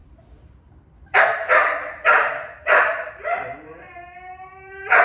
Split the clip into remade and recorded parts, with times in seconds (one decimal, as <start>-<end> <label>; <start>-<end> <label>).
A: 0.0-5.0 remade